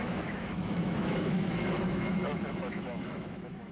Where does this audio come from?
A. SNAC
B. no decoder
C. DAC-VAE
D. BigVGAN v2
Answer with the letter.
C